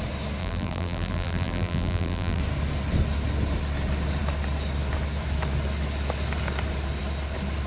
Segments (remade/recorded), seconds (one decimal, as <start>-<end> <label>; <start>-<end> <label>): 0.0-0.4 recorded; 0.4-2.4 remade; 2.4-7.7 recorded

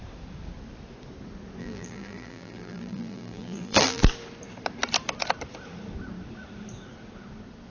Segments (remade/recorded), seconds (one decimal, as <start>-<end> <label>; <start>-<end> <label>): 0.0-1.6 recorded; 1.6-4.0 remade; 4.0-7.7 recorded

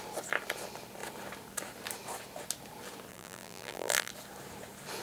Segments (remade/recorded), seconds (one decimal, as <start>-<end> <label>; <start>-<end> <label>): 0.0-3.1 recorded; 3.1-4.1 remade; 4.1-5.0 recorded

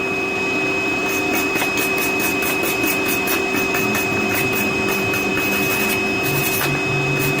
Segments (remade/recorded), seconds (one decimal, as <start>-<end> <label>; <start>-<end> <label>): 0.0-1.0 recorded; 1.0-1.5 remade; 1.5-2.3 recorded; 2.3-5.3 remade; 5.3-7.4 recorded

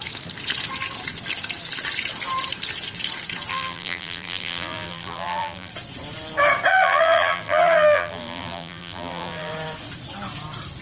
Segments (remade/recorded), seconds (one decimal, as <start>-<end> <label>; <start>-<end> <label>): 0.0-3.5 recorded; 3.5-5.7 remade; 5.7-6.7 recorded; 6.7-9.5 remade; 9.5-10.8 recorded

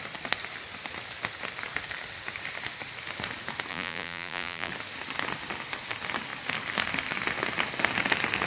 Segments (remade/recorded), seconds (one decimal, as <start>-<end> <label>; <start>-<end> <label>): 0.0-3.7 recorded; 3.7-4.7 remade; 4.7-8.5 recorded

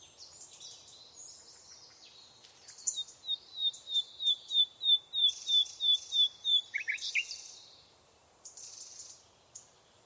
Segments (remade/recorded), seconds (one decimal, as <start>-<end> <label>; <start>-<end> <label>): 0.0-3.6 recorded; 3.6-8.7 remade; 8.7-10.1 recorded